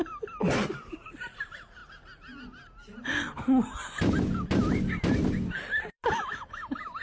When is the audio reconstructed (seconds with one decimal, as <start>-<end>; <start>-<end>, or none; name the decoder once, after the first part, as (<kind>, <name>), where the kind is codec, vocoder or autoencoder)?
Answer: 0.0-1.8 (vocoder, BigVGAN v2); 4.1-7.0